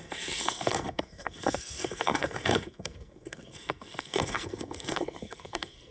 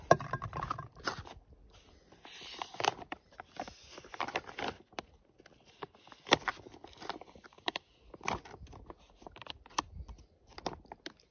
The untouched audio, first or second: second